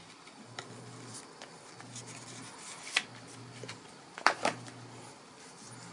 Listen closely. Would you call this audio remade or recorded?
recorded